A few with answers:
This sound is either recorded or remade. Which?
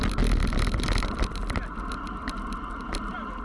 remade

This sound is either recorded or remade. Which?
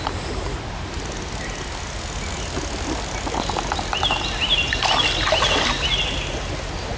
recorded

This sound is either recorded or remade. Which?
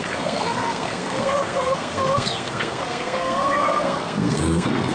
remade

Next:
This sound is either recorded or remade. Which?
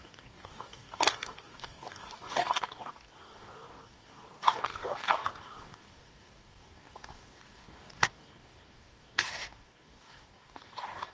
remade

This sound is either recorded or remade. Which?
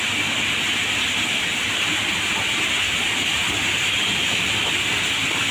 recorded